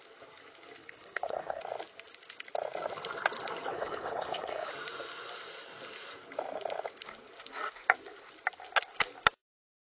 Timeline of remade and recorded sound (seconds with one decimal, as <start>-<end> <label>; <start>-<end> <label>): 0.0-0.8 recorded; 0.8-1.6 remade; 1.6-3.7 recorded; 3.7-4.7 remade; 4.7-9.8 recorded